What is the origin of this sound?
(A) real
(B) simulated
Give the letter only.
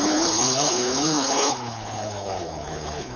B